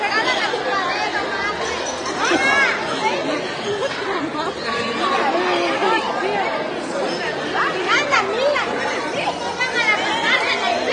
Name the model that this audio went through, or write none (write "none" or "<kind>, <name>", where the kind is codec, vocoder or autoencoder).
none